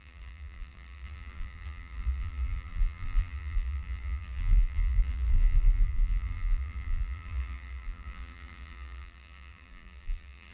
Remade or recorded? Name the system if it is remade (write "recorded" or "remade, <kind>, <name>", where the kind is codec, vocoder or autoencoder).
remade, vocoder, BigVGAN v2